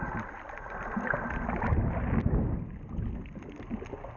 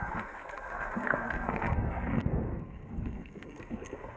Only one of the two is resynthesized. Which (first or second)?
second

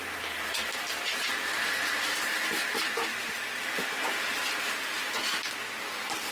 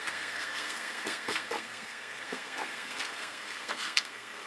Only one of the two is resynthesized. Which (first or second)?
second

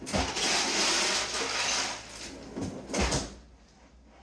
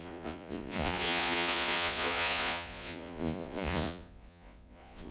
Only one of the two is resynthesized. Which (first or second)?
second